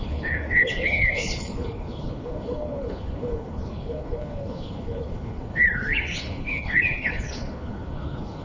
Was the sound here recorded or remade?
remade